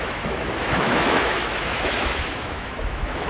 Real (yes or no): no